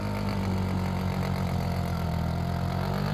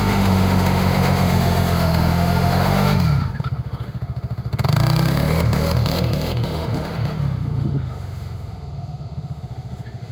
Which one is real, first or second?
first